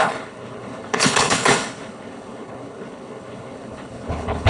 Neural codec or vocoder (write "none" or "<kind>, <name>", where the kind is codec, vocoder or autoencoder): codec, HILCodec